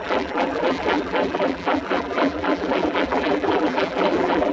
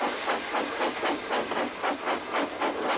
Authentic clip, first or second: second